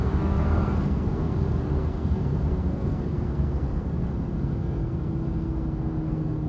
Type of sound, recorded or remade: remade